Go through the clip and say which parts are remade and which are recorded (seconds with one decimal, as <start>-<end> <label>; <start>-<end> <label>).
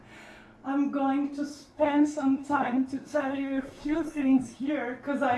0.0-1.5 recorded; 1.5-4.7 remade; 4.7-5.4 recorded